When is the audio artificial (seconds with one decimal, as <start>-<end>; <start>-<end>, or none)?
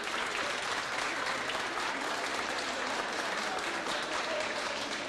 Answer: 0.0-5.1